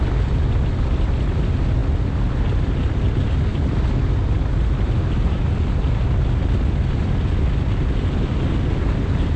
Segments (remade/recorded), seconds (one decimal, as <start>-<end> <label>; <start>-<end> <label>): 0.0-9.4 recorded